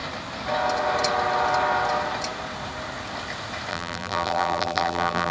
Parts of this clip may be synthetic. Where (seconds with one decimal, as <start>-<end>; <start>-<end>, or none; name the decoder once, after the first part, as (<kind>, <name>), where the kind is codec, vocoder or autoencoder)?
3.7-5.3 (vocoder, BigVGAN v2)